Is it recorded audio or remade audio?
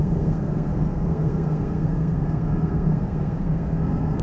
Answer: remade